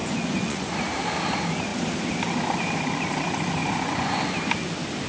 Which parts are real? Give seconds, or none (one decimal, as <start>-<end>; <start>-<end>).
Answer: 0.7-3.6; 4.2-5.1